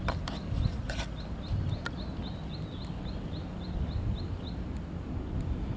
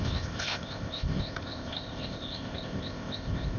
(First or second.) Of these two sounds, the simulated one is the second